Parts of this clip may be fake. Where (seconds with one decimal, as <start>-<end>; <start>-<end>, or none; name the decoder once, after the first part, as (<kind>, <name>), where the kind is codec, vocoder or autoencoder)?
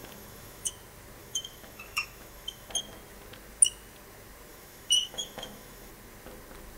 0.0-0.7 (autoencoder, DAC-VAE); 1.2-2.7; 4.5-5.9